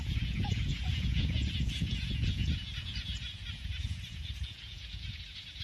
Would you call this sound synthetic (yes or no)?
yes